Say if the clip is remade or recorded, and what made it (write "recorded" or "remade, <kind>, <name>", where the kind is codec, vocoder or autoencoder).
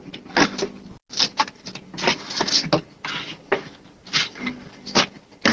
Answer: recorded